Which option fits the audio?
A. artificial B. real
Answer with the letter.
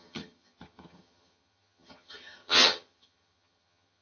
A